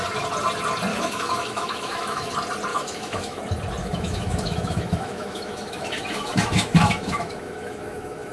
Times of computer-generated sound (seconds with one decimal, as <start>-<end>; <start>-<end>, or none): 0.9-2.3; 2.7-3.4; 3.8-8.3